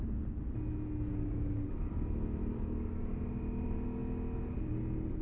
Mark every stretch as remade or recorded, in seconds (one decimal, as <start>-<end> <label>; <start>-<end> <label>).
0.0-1.1 recorded; 1.1-1.9 remade; 1.9-2.4 recorded; 2.4-3.1 remade; 3.1-5.2 recorded